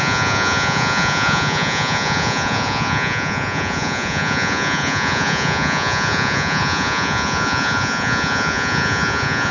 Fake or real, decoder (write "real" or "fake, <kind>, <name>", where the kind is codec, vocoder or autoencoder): fake, vocoder, Vocos